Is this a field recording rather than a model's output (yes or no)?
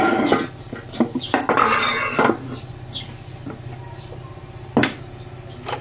yes